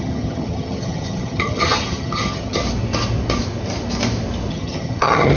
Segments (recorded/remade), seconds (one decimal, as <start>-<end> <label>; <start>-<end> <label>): 0.0-2.6 remade; 2.6-4.5 recorded; 4.5-5.4 remade